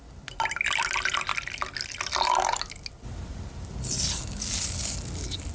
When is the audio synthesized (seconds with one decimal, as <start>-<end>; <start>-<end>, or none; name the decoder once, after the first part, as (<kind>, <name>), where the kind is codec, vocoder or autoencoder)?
none

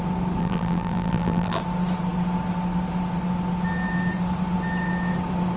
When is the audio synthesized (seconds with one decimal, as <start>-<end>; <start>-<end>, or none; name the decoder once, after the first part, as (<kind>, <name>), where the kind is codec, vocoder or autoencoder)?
0.4-1.6 (vocoder, BigVGAN v2)

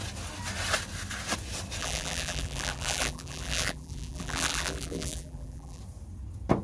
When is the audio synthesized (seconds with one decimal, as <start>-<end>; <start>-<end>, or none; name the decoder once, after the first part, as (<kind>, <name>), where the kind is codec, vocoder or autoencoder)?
1.8-5.8 (vocoder, BigVGAN v2)

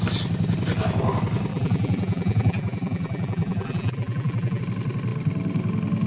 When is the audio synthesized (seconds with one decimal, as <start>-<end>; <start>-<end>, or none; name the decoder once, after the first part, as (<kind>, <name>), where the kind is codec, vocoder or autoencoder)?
1.5-4.6 (vocoder, BigVGAN v2)

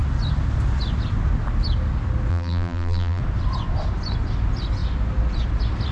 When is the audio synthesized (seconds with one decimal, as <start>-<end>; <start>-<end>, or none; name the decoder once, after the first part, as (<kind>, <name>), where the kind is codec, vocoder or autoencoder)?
2.3-3.2 (vocoder, BigVGAN v2)

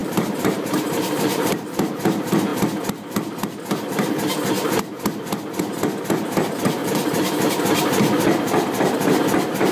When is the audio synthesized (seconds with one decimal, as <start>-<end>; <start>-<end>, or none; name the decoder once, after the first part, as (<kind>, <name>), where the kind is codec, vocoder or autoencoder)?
0.0-1.9 (vocoder, BigVGAN v2); 6.8-7.5

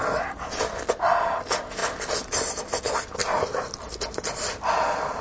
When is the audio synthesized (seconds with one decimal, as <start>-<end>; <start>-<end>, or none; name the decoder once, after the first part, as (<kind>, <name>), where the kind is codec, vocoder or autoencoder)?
none